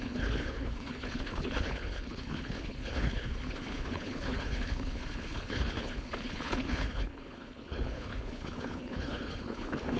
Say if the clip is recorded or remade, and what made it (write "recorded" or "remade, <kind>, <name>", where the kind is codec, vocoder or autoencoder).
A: remade, codec, HILCodec